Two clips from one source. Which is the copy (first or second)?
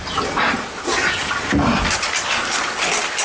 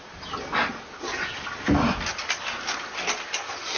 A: first